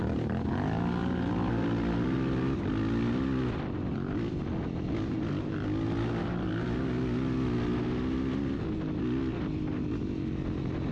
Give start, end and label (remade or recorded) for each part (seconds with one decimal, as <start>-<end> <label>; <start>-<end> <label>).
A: 0.0-10.9 recorded